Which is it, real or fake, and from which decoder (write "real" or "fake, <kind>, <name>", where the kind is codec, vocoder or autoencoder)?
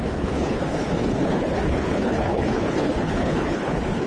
fake, codec, HILCodec